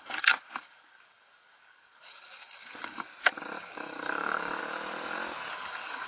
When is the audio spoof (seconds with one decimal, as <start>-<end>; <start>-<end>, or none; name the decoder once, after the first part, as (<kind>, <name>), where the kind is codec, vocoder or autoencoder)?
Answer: 0.0-3.1 (codec, DAC); 3.6-4.6; 5.5-6.1